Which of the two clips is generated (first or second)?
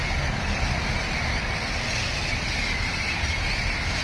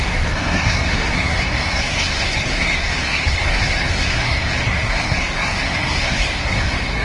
second